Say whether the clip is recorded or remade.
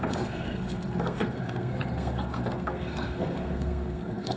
remade